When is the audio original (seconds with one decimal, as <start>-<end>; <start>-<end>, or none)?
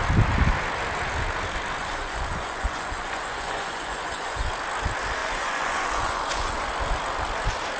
0.0-1.8; 4.5-5.2; 6.7-7.8